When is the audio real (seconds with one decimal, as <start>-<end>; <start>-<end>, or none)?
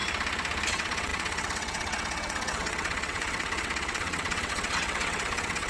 0.0-0.7